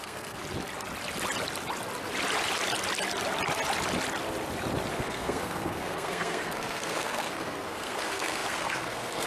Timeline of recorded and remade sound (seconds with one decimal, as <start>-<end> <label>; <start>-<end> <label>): 0.0-0.4 remade; 0.4-4.9 recorded; 4.9-9.3 remade